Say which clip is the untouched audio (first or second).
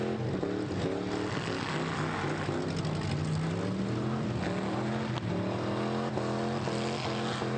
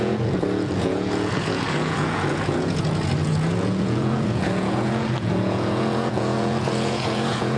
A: first